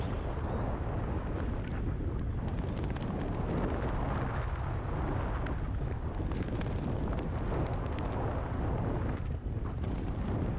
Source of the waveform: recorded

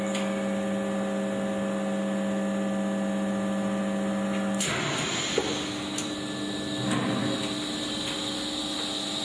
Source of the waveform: recorded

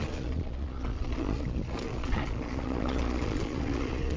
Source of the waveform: remade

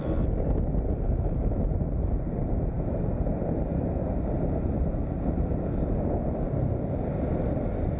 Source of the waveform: recorded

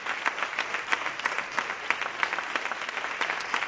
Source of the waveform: recorded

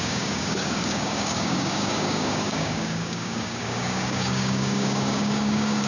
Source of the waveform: remade